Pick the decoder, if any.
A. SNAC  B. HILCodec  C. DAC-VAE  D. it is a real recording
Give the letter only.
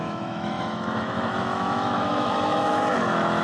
C